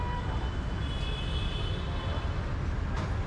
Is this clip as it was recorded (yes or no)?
yes